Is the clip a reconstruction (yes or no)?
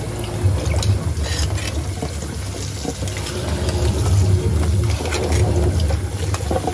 no